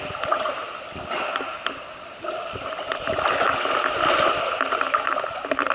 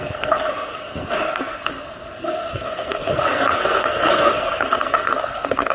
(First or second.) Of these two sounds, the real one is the first